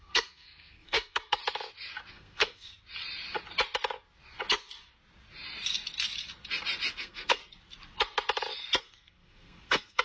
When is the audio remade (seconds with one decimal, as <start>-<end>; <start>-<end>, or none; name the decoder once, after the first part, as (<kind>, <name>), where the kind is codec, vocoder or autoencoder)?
0.0-1.4 (codec, SNAC); 2.1-2.7; 7.0-7.4; 8.8-10.0